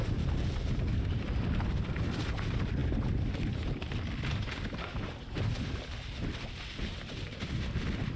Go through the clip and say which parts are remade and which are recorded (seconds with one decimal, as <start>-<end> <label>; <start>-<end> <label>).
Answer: 0.0-8.2 recorded